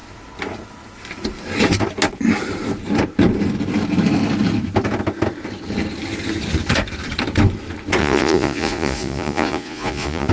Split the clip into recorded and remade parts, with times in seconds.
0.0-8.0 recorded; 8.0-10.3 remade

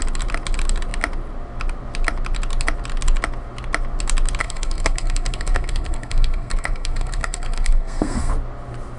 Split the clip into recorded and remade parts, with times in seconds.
0.0-4.4 recorded; 4.4-8.3 remade; 8.3-9.0 recorded

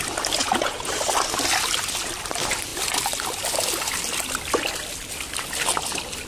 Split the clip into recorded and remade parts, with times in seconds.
0.0-0.4 recorded; 0.4-0.9 remade; 0.9-6.3 recorded

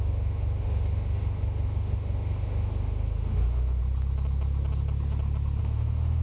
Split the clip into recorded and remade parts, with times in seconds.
0.0-3.8 remade; 3.8-5.6 recorded; 5.6-6.2 remade